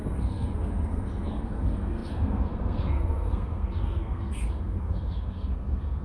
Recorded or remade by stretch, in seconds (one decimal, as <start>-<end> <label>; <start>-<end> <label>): 0.0-6.0 remade